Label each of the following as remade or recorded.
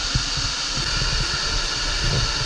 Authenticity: recorded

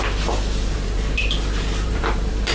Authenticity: remade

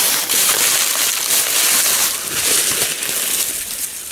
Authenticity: recorded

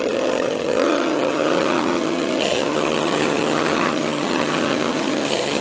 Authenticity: remade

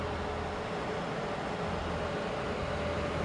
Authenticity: recorded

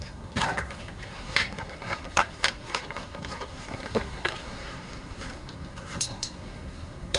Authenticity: remade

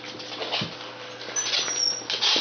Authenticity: recorded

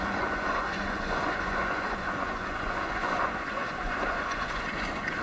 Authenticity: remade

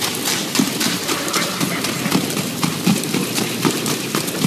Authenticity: recorded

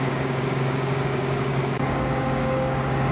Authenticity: remade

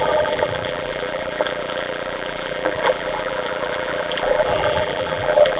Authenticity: remade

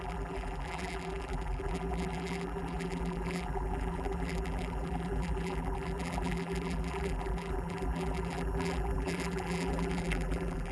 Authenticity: remade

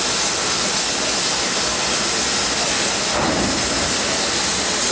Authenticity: recorded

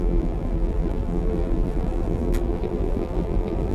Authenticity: remade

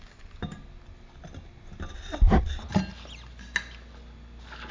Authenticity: recorded